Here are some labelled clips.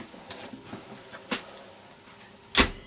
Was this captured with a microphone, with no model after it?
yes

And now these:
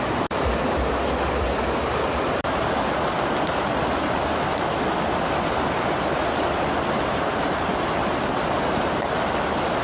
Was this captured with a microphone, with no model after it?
yes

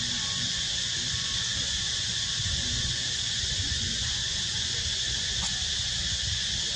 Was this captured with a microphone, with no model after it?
no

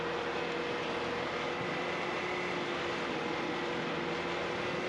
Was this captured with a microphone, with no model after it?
yes